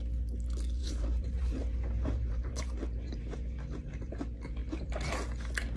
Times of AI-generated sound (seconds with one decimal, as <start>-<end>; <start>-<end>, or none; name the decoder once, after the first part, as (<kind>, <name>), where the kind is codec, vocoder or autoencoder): 0.8-4.1 (vocoder, BigVGAN v2); 4.6-5.1